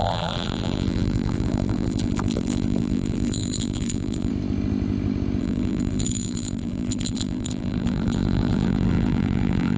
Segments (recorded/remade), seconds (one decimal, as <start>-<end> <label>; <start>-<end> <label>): 0.0-4.3 remade; 4.3-5.4 recorded; 5.4-9.8 remade